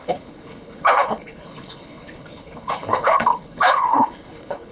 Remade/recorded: remade